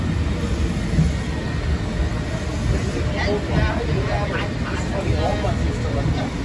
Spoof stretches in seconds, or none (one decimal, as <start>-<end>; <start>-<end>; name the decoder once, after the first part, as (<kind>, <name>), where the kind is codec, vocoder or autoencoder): none